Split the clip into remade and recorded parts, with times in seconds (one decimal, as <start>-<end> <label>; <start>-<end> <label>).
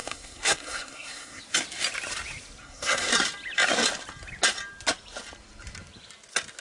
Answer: 0.0-1.4 remade; 1.4-2.6 recorded; 2.6-3.1 remade; 3.1-6.6 recorded